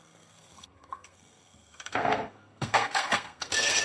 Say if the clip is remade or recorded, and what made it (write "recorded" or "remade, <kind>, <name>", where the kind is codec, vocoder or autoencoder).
remade, codec, SNAC